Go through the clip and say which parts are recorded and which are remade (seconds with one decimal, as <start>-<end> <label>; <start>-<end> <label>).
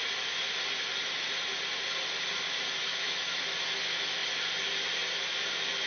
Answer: 0.0-2.8 recorded; 2.8-3.4 remade; 3.4-5.9 recorded